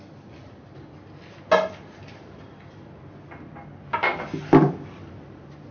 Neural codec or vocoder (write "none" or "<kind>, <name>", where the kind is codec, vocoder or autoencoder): none